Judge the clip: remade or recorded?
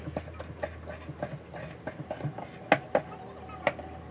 recorded